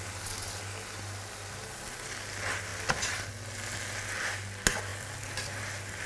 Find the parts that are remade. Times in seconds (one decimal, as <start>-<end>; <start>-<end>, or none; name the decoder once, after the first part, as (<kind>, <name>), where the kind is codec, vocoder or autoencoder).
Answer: none